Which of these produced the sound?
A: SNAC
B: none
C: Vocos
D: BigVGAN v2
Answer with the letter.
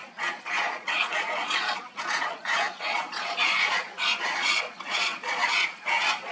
C